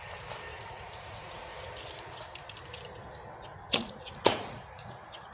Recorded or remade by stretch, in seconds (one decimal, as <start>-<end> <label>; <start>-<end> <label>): 0.0-0.5 recorded; 0.5-1.7 remade; 1.7-3.5 recorded; 3.5-5.3 remade